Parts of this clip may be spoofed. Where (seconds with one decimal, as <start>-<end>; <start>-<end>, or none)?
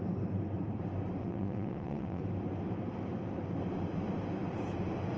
1.2-2.2